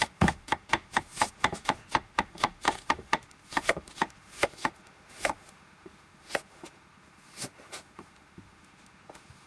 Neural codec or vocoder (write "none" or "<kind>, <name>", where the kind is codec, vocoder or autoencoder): autoencoder, DAC-VAE